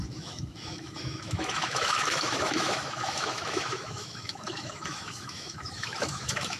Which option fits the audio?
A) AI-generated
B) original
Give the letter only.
A